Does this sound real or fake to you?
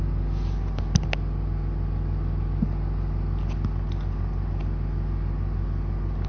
real